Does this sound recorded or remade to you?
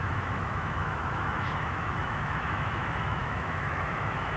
remade